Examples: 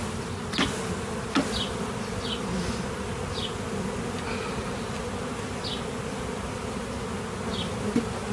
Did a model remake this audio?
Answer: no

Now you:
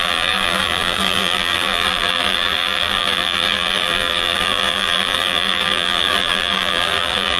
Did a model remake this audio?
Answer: yes